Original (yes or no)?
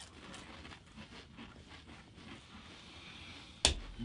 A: yes